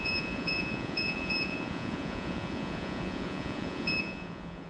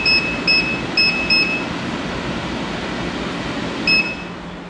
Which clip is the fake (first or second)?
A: first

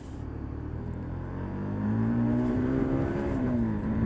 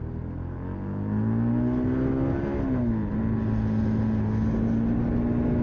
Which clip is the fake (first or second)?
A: first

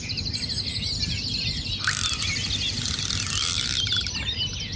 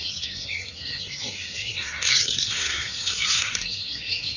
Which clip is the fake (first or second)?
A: second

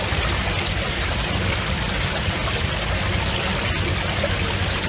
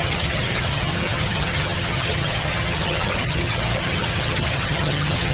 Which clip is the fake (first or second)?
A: second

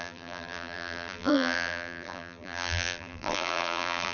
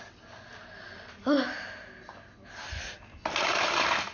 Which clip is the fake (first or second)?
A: first